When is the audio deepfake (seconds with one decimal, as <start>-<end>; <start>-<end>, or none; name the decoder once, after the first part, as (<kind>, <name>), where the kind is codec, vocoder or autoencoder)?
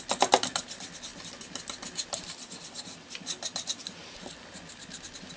none